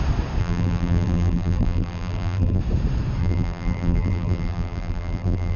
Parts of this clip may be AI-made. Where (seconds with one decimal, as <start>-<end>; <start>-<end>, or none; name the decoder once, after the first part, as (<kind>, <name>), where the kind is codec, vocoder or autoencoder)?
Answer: 0.4-2.6 (vocoder, BigVGAN v2); 3.2-5.6